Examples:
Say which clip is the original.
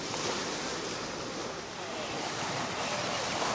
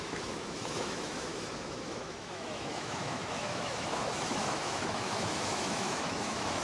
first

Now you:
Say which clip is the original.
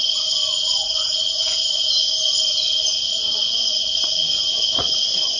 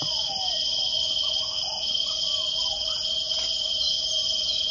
second